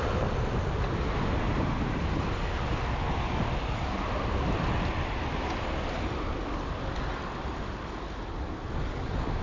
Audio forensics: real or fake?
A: real